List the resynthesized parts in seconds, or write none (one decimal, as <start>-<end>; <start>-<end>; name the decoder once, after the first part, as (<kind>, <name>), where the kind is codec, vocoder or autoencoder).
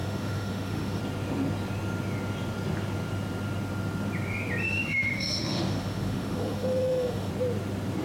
0.0-1.0 (autoencoder, DAC-VAE); 4.6-7.3